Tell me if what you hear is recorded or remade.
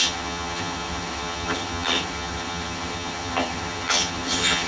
remade